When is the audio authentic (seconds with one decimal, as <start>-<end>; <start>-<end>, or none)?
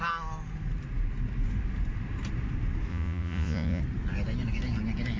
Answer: 0.0-2.9; 3.8-5.2